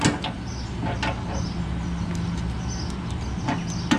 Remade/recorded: recorded